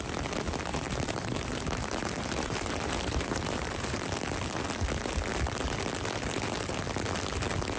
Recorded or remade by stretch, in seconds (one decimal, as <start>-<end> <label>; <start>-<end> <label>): 0.0-0.7 recorded; 0.7-4.0 remade; 4.0-7.8 recorded